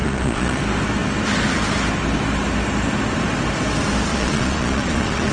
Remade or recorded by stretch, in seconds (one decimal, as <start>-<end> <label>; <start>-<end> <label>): 0.0-0.6 remade; 0.6-4.1 recorded; 4.1-5.3 remade